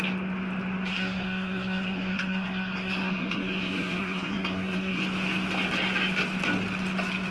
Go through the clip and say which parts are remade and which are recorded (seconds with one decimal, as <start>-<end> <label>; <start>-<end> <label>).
0.0-0.9 recorded; 0.9-5.0 remade; 5.0-7.3 recorded